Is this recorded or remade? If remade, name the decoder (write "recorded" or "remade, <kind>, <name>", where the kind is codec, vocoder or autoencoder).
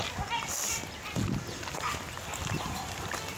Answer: recorded